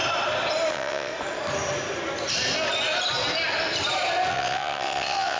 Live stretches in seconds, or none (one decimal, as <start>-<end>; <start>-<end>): 0.0-0.7; 1.1-4.3